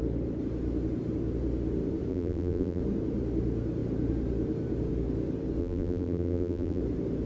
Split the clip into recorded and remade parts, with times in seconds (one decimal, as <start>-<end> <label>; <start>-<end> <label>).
0.0-2.1 recorded; 2.1-2.8 remade; 2.8-5.6 recorded; 5.6-6.8 remade; 6.8-7.3 recorded